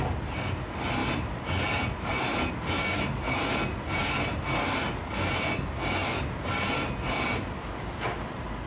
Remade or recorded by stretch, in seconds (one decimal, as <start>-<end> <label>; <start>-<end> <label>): 0.0-8.7 recorded